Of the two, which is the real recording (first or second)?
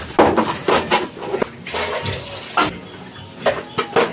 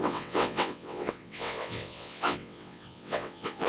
first